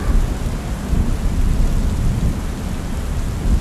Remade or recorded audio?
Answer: recorded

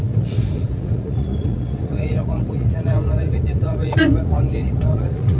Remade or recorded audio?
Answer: remade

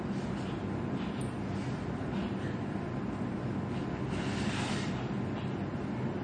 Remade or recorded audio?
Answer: recorded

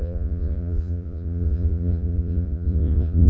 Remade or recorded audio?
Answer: remade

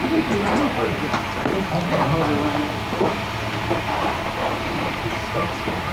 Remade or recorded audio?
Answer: recorded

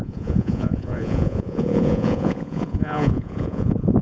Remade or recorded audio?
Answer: remade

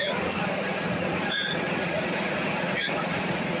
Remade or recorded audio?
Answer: remade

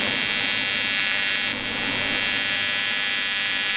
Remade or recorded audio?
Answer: recorded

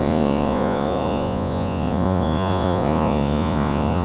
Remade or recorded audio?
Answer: remade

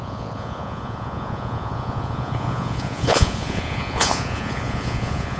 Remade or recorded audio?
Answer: remade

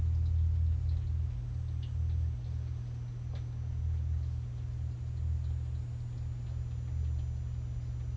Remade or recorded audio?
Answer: recorded